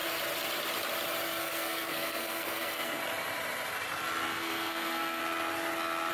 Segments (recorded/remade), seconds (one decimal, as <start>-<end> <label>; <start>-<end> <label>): 0.0-1.4 recorded; 1.4-3.0 remade; 3.0-4.3 recorded; 4.3-5.2 remade; 5.2-6.1 recorded